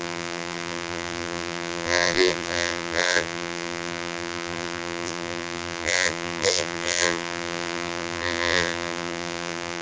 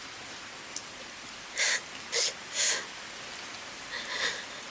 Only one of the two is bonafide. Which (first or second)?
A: second